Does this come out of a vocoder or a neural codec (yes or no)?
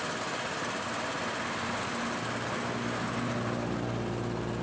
no